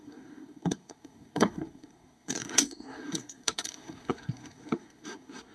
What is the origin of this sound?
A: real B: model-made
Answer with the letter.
B